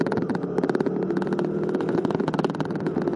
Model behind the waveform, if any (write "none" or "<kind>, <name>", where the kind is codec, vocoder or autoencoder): none